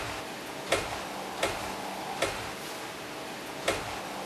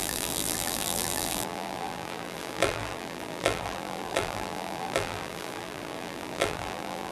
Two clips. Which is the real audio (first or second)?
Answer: first